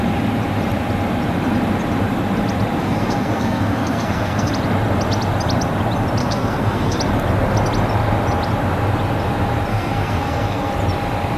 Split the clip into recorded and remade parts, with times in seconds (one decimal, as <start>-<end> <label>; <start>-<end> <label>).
0.0-2.8 recorded; 2.8-4.5 remade; 4.5-6.2 recorded; 6.2-7.0 remade; 7.0-9.7 recorded; 9.7-10.7 remade; 10.7-11.4 recorded